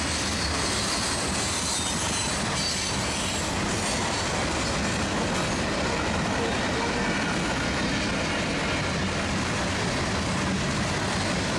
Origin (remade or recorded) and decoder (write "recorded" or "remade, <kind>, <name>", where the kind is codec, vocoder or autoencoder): recorded